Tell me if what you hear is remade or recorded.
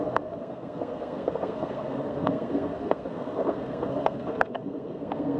remade